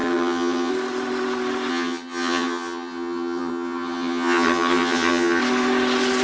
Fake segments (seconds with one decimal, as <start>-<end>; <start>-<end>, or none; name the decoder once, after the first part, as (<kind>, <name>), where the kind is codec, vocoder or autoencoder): 0.0-0.7 (vocoder, HiFi-GAN); 1.7-5.4